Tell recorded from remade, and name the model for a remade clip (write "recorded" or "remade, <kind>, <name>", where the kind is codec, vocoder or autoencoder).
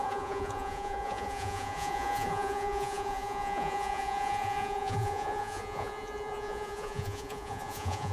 remade, vocoder, Vocos